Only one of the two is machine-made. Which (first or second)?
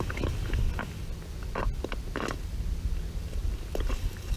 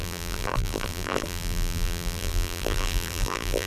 second